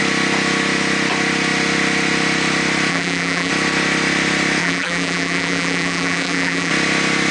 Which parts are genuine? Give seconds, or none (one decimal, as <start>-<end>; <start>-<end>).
0.0-2.9; 3.5-4.6; 6.7-7.3